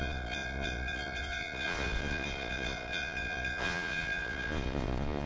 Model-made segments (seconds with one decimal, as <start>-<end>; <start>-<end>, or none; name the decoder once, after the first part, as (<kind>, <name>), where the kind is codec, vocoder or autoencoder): 0.0-5.3 (vocoder, Vocos)